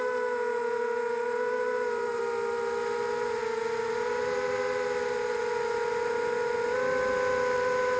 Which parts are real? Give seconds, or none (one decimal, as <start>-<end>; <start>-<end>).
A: 0.0-0.6; 2.2-3.4; 5.4-8.0